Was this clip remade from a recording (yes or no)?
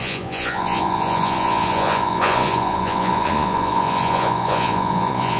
yes